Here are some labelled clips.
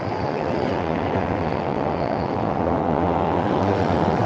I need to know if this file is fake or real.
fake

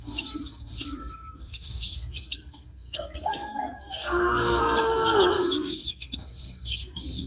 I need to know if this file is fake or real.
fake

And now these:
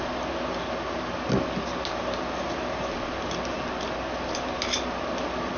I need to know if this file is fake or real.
real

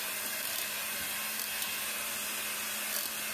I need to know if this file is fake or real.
real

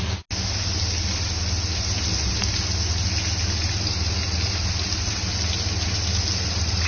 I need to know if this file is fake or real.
real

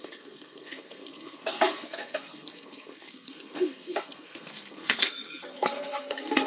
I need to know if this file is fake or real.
fake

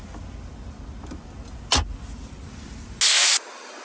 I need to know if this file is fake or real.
real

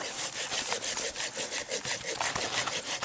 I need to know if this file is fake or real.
real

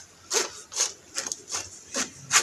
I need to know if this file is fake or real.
real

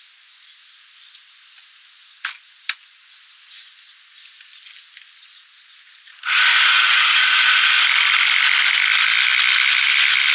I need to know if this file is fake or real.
real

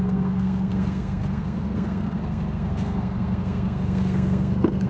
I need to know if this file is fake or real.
fake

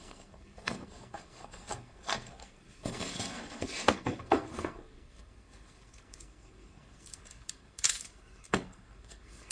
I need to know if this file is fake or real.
fake